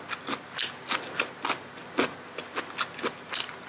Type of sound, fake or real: real